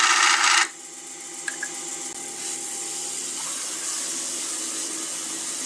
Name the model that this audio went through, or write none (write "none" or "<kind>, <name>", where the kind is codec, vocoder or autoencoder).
none